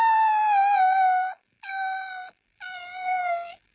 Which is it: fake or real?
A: fake